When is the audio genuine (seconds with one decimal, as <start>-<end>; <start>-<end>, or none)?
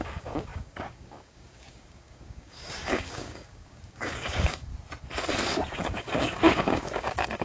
4.7-5.7